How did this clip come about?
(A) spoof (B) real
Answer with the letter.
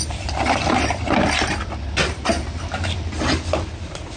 B